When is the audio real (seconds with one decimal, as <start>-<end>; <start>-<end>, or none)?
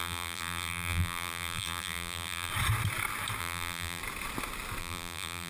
2.5-3.4; 4.0-4.8